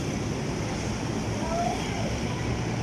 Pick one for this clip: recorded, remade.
recorded